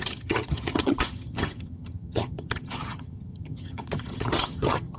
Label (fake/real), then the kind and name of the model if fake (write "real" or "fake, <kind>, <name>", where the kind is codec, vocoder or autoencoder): fake, vocoder, HiFi-GAN